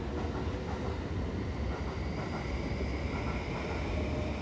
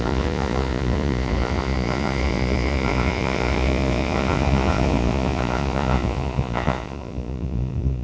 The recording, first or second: first